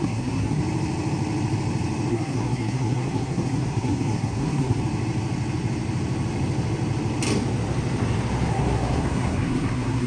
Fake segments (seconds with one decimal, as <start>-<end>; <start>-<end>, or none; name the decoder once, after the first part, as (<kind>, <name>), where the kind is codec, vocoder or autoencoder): 0.0-0.6 (codec, SNAC); 2.1-4.8; 8.5-10.1